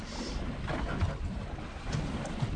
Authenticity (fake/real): real